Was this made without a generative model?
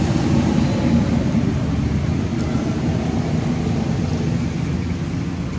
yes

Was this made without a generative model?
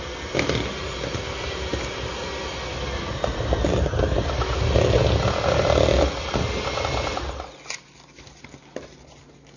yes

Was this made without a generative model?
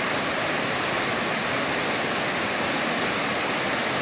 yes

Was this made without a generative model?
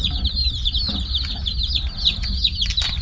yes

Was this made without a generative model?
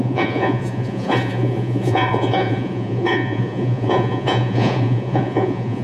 no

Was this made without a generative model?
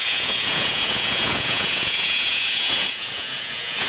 no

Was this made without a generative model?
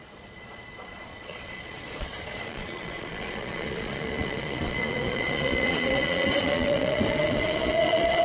no